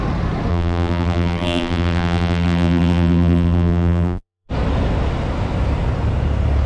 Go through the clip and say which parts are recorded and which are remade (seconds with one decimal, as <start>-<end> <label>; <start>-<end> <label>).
0.0-0.5 recorded; 0.5-4.5 remade; 4.5-6.7 recorded